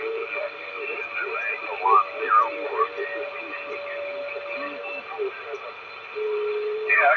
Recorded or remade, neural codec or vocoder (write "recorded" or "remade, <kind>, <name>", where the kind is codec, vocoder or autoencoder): recorded